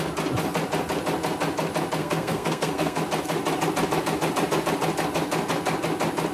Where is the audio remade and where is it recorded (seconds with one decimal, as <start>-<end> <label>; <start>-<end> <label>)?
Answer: 0.0-2.0 recorded; 2.0-3.0 remade; 3.0-6.3 recorded

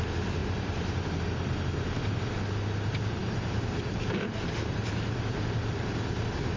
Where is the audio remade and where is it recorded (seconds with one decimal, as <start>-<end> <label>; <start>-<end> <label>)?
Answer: 0.0-0.4 recorded; 0.4-1.2 remade; 1.2-3.2 recorded; 3.2-3.9 remade; 3.9-6.6 recorded

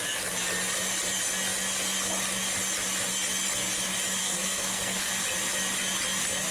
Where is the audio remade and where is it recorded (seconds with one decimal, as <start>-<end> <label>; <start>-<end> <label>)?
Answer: 0.0-4.2 recorded; 4.2-5.1 remade; 5.1-6.5 recorded

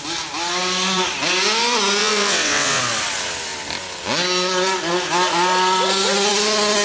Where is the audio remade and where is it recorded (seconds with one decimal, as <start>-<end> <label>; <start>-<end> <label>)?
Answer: 0.0-2.0 recorded; 2.0-2.8 remade; 2.8-6.8 recorded

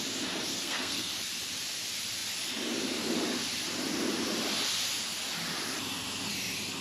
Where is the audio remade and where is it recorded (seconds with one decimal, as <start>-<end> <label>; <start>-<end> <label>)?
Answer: 0.0-0.5 recorded; 0.5-1.1 remade; 1.1-6.8 recorded